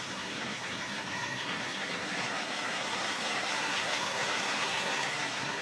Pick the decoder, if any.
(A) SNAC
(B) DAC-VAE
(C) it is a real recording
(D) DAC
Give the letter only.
A